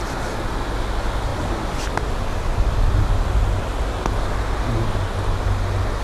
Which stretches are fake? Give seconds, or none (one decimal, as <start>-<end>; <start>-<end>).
none